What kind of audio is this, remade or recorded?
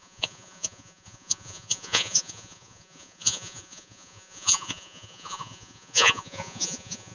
remade